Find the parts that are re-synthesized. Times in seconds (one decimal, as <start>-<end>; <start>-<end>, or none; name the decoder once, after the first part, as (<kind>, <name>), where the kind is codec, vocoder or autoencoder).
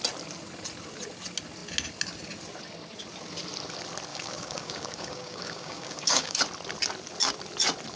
4.1-6.4 (codec, DAC)